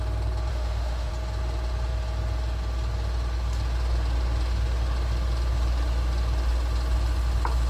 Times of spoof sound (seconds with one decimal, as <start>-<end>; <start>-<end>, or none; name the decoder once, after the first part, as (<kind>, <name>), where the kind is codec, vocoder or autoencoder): 0.5-1.1 (autoencoder, DAC-VAE)